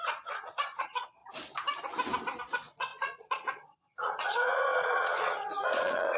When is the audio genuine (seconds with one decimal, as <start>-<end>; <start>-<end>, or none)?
1.2-2.4